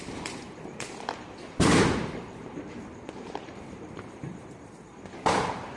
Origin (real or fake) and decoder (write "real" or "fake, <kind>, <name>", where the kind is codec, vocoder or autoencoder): fake, vocoder, BigVGAN v2